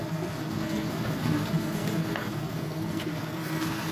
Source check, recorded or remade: remade